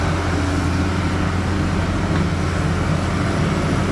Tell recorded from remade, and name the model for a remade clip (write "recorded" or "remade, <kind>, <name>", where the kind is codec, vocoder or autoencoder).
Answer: recorded